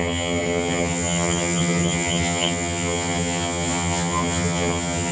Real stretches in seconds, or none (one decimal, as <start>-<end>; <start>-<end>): none